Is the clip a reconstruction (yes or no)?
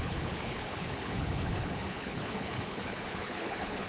yes